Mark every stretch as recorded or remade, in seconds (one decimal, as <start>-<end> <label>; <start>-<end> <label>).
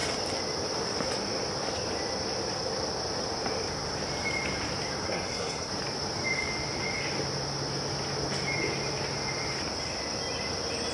0.0-5.0 recorded; 5.0-5.7 remade; 5.7-10.9 recorded